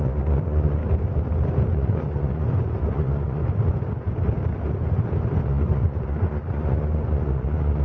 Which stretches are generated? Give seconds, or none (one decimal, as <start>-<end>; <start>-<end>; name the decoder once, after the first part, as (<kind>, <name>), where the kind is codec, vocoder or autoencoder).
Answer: 0.0-0.8 (vocoder, Vocos); 1.7-3.4; 5.4-7.8